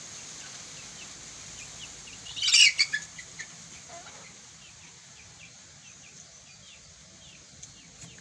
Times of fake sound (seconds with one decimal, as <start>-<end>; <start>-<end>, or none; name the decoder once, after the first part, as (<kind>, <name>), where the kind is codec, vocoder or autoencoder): none